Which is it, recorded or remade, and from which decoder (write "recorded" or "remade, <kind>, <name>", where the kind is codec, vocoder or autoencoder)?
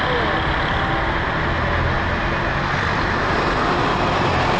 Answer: recorded